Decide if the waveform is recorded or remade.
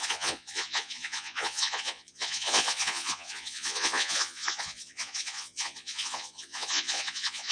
remade